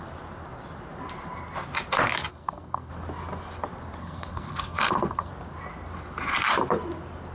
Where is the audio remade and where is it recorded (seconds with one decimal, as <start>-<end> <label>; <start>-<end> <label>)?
0.0-2.3 recorded; 2.3-2.9 remade; 2.9-4.0 recorded; 4.0-5.3 remade; 5.3-7.3 recorded